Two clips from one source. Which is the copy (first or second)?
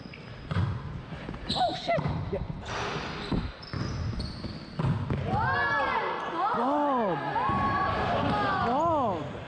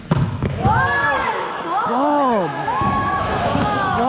second